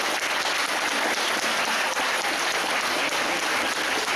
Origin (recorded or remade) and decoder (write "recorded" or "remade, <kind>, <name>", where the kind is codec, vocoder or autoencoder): recorded